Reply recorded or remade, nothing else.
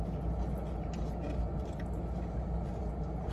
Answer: recorded